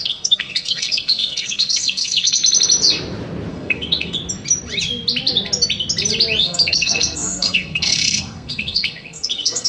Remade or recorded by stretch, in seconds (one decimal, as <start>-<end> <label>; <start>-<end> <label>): 0.0-2.4 remade; 2.4-3.5 recorded; 3.5-4.2 remade; 4.2-6.4 recorded; 6.4-9.7 remade